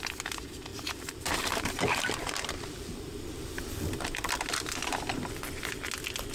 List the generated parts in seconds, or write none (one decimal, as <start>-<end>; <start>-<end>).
0.7-4.3